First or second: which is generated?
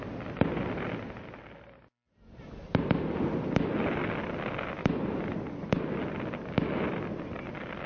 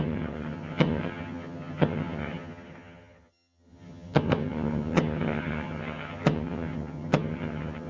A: second